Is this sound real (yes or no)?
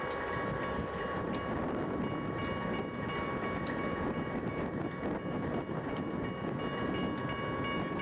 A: yes